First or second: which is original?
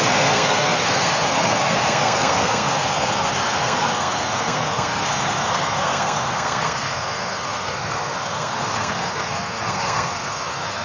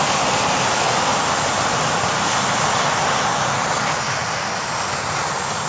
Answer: second